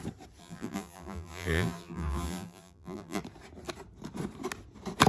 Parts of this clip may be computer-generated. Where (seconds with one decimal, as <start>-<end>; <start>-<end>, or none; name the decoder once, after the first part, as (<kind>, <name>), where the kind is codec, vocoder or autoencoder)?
0.4-3.2 (vocoder, BigVGAN v2)